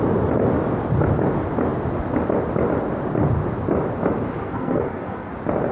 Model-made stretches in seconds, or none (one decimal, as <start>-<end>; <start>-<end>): 4.4-5.3

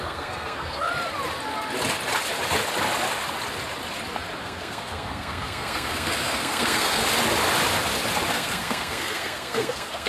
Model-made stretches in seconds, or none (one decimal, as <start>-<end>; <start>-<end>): 0.0-0.9; 4.4-7.0; 8.3-10.1

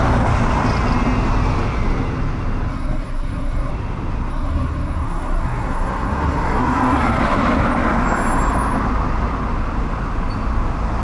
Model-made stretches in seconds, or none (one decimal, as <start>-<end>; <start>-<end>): 2.7-3.7; 4.3-7.2

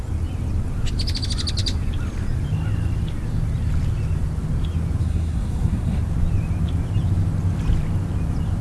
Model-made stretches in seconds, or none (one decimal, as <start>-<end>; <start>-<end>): 5.0-6.0

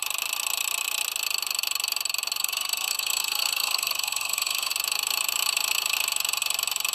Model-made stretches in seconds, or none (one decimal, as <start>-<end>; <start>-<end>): 2.4-4.7

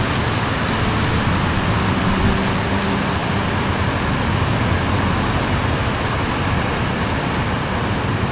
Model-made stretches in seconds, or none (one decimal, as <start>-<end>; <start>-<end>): none

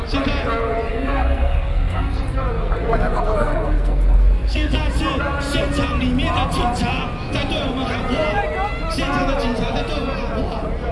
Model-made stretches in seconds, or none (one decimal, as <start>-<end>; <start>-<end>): 0.9-4.8